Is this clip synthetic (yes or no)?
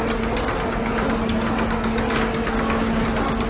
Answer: no